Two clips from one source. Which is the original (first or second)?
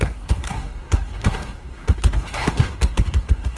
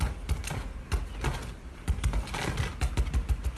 second